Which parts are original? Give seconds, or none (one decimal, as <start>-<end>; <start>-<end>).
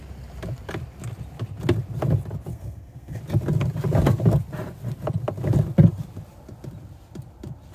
0.0-2.5; 3.2-7.7